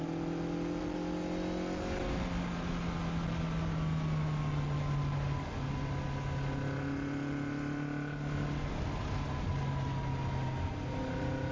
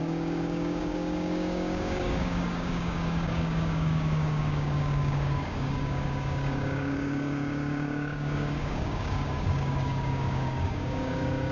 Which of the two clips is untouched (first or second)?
first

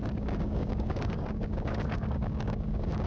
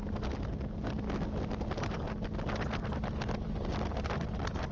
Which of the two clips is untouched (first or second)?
second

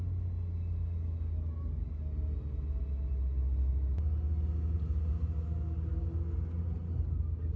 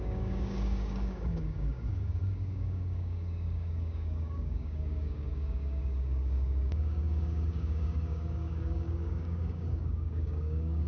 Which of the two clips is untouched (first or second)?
first